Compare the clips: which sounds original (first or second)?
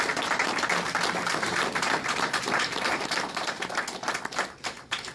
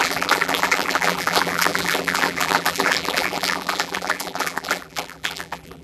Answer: first